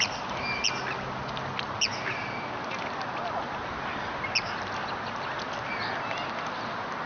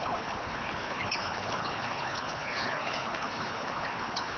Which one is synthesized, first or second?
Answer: second